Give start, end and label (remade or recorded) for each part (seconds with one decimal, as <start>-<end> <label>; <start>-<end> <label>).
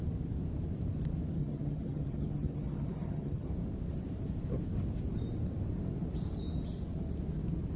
0.0-1.4 recorded; 1.4-3.5 remade; 3.5-7.8 recorded